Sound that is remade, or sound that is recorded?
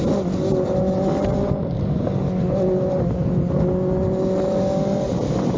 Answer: recorded